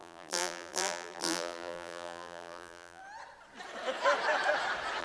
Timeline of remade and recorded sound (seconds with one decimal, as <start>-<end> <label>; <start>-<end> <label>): 0.0-3.0 remade; 3.0-5.0 recorded